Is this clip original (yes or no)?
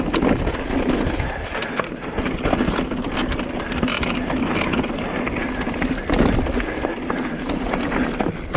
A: yes